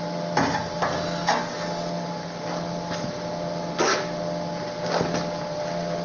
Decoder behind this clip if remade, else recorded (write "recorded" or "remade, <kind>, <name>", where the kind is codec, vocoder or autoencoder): recorded